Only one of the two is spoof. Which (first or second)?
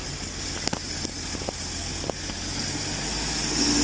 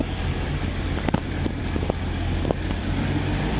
second